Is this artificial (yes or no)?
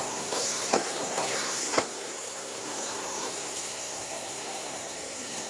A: yes